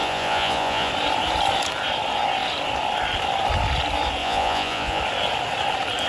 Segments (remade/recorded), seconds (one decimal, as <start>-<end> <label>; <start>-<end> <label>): 0.0-0.9 remade; 0.9-4.2 recorded; 4.2-5.0 remade; 5.0-6.1 recorded